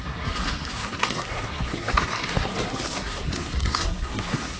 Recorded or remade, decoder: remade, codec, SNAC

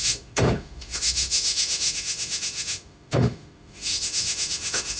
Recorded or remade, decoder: remade, autoencoder, DAC-VAE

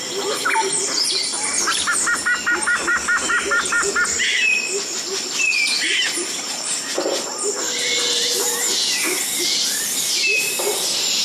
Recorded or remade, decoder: remade, vocoder, BigVGAN v2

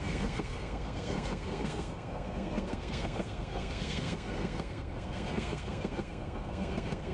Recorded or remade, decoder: remade, codec, SNAC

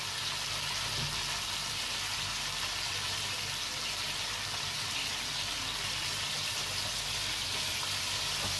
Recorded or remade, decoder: recorded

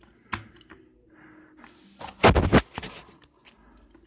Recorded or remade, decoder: recorded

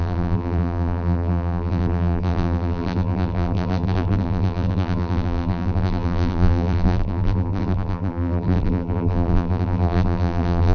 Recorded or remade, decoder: remade, vocoder, BigVGAN v2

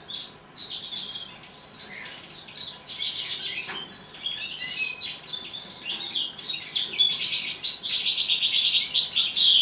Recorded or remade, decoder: recorded